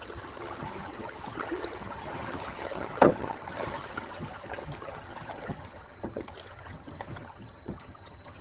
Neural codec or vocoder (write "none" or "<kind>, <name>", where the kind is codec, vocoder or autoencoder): vocoder, HiFi-GAN